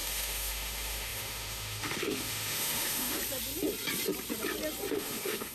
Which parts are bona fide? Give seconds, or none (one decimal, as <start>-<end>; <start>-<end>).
3.2-4.9